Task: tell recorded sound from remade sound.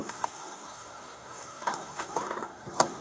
remade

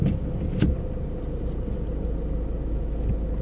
recorded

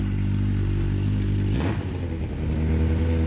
recorded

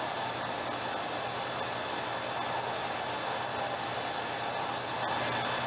recorded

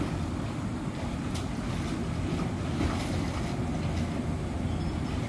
recorded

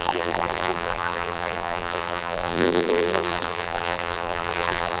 remade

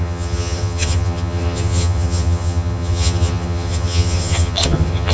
remade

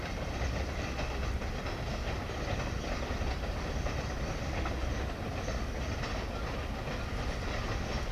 recorded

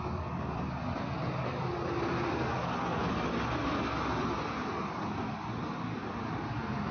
recorded